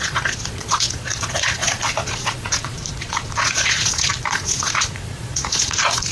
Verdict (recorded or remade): remade